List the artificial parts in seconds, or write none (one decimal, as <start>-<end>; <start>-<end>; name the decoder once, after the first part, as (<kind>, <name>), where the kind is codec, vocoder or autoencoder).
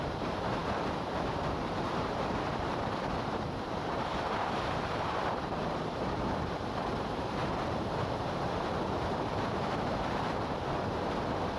0.0-11.6 (vocoder, BigVGAN v2)